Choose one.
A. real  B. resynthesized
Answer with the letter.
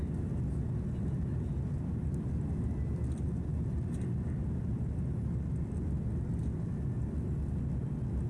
A